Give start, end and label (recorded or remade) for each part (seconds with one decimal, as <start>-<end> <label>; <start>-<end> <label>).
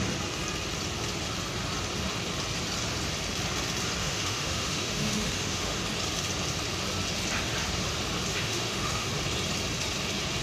0.0-4.0 recorded; 4.0-5.8 remade; 5.8-8.3 recorded; 8.3-9.1 remade; 9.1-10.4 recorded